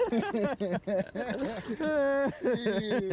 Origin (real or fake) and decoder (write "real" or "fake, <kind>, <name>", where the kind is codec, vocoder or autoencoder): real